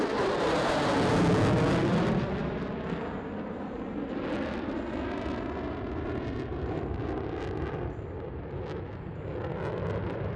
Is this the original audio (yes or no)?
yes